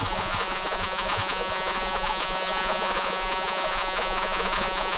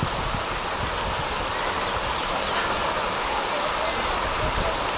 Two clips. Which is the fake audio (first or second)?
first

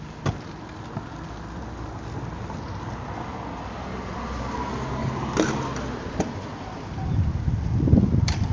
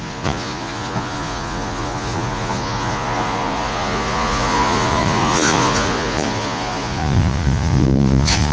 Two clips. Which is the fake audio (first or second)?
second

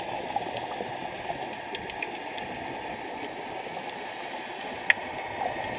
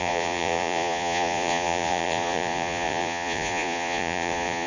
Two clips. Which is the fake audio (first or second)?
second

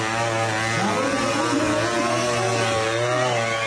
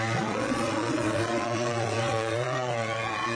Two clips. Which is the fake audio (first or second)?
second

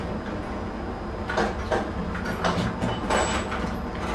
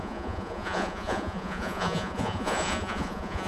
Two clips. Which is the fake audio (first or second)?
second